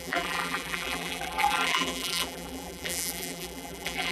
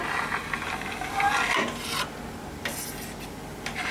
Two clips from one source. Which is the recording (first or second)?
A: second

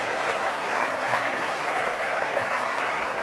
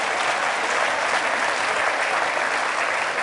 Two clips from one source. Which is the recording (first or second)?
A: second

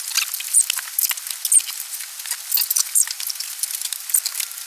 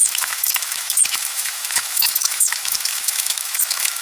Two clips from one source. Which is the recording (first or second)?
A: first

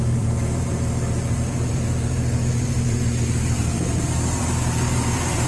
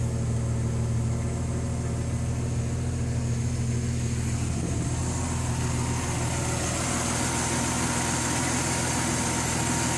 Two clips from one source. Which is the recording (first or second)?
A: second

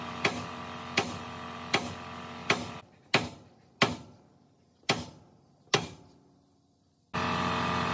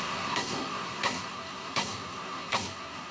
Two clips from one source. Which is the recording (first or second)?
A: first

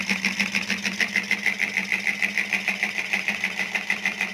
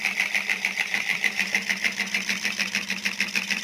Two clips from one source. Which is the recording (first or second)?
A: first